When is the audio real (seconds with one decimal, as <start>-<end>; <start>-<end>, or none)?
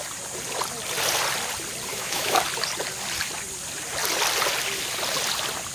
0.0-1.9; 2.4-5.7